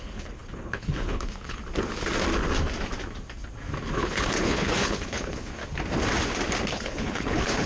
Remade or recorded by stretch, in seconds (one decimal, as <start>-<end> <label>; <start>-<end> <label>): 0.0-1.6 remade; 1.6-3.8 recorded; 3.8-5.6 remade; 5.6-6.7 recorded; 6.7-7.7 remade